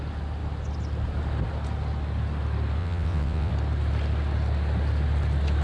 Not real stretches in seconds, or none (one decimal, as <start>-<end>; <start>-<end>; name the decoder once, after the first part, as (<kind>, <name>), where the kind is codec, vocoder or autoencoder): 2.8-3.5 (vocoder, WaveNeXt)